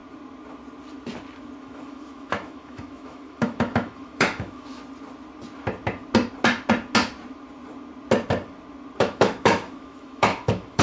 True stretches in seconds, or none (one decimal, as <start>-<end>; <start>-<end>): 0.0-1.6; 4.8-9.0